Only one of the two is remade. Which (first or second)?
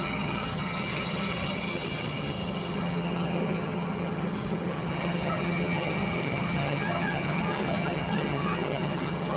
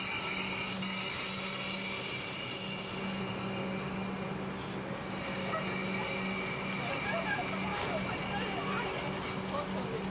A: first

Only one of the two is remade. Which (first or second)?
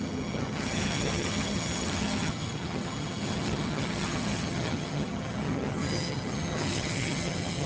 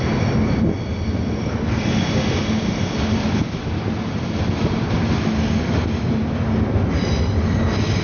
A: first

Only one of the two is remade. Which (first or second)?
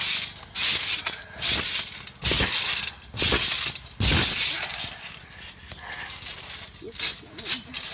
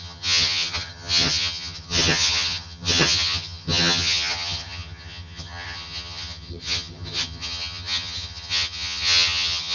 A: second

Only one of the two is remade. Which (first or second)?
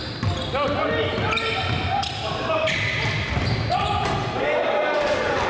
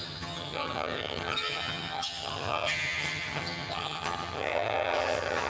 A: second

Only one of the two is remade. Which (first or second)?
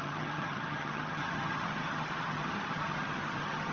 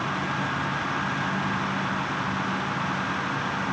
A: first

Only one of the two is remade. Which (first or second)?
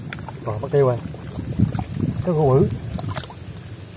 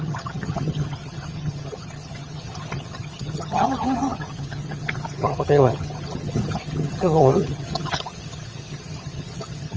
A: second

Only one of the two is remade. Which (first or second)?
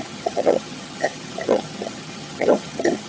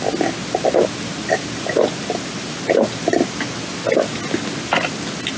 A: first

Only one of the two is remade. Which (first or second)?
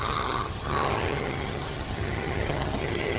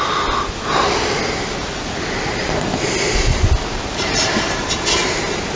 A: first